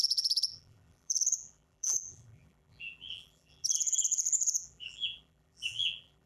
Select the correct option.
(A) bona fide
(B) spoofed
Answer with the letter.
B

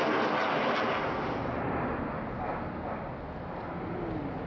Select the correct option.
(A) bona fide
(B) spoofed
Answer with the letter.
A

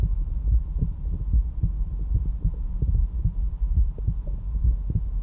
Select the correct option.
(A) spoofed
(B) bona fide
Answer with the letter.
B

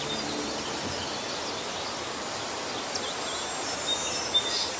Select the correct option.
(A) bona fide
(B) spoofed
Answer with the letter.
A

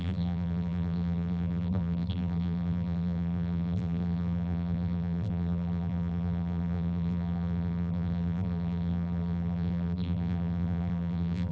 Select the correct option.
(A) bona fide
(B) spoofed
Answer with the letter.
B